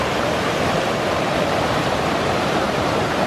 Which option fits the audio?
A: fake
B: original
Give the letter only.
A